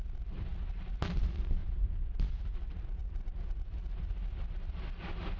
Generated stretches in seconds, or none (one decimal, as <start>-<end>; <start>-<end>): 1.6-2.2; 3.0-3.8